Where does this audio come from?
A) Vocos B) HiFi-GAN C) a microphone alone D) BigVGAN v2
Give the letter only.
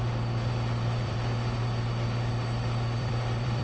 D